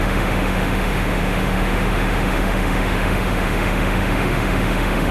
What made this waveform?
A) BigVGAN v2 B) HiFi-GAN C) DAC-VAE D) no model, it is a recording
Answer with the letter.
C